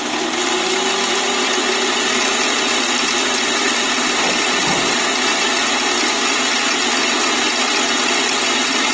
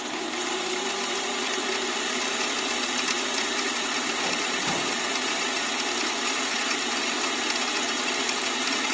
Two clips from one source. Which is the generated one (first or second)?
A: second